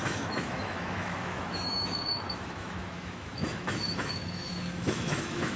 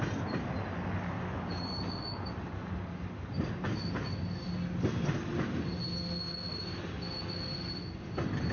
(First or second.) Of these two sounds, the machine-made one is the first